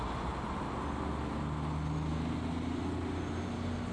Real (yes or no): yes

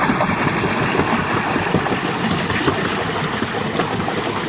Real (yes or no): yes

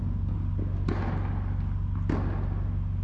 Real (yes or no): yes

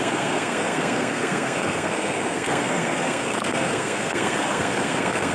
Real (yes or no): no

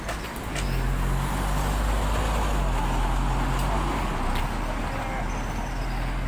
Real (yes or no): yes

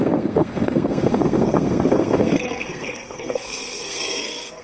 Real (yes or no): no